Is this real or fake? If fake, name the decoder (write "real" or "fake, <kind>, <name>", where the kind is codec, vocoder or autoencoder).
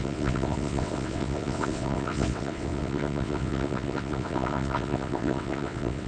fake, vocoder, WaveNeXt